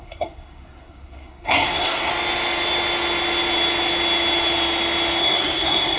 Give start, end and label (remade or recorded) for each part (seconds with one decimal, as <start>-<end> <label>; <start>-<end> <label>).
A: 0.0-2.1 remade; 2.1-5.2 recorded; 5.2-6.0 remade

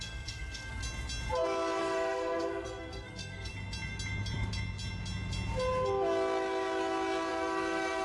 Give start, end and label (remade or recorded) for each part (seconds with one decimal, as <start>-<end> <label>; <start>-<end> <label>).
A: 0.0-0.8 remade; 0.8-1.8 recorded; 1.8-3.5 remade; 3.5-7.3 recorded; 7.3-8.0 remade